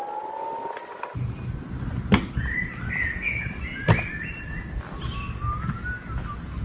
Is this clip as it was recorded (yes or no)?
yes